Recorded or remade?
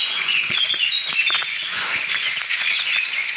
remade